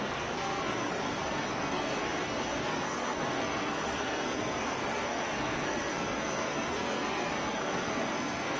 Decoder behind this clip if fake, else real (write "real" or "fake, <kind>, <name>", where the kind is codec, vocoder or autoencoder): fake, codec, SNAC